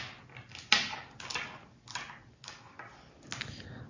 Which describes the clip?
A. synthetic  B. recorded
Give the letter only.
B